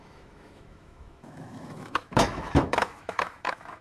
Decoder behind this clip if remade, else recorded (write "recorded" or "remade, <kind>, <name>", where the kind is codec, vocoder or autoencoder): remade, autoencoder, DAC-VAE